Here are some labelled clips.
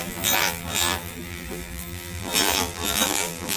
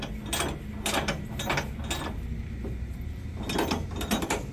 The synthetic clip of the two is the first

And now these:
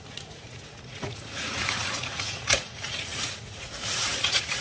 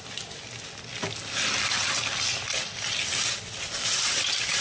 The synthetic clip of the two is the first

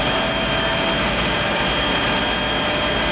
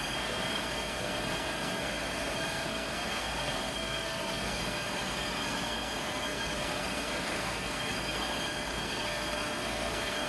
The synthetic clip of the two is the second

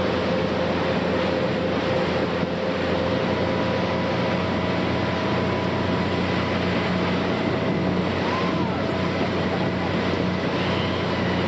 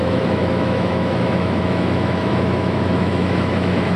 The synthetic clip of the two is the second